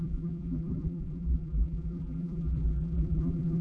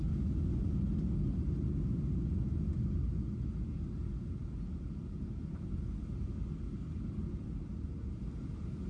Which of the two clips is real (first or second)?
second